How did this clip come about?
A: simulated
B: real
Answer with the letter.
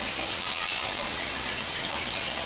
A